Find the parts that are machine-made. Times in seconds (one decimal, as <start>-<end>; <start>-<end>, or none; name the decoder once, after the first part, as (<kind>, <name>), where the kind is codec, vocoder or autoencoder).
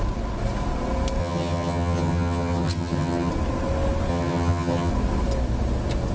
1.2-3.3 (vocoder, HiFi-GAN); 4.1-4.9